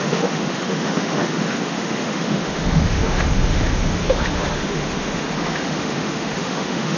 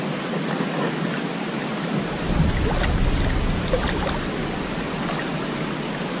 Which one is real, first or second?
second